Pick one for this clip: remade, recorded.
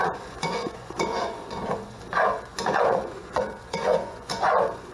remade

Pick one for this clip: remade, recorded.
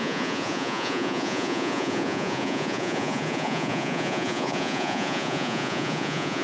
remade